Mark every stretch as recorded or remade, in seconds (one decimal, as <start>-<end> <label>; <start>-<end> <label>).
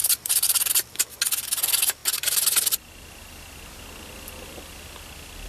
0.0-1.0 remade; 1.0-5.5 recorded